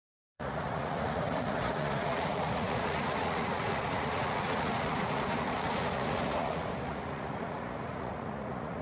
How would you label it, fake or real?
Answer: fake